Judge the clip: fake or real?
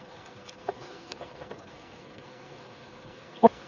fake